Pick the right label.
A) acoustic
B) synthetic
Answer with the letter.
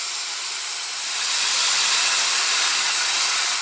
A